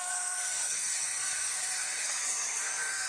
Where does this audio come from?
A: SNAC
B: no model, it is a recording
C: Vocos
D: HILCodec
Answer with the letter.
A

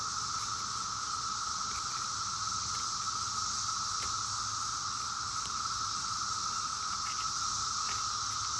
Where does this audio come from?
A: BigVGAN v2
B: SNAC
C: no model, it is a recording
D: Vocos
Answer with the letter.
C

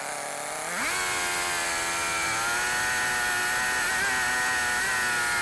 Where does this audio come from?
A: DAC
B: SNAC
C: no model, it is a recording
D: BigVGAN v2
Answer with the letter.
C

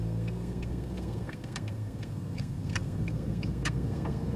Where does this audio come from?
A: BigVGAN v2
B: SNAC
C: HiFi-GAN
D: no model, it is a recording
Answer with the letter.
B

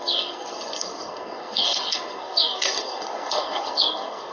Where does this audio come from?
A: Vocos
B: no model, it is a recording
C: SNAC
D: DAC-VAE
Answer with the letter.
C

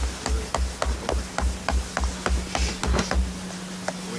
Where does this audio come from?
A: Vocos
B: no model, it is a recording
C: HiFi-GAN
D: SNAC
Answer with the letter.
B